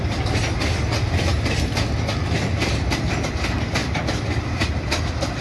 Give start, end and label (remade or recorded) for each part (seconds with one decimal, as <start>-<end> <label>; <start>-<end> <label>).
0.0-5.4 recorded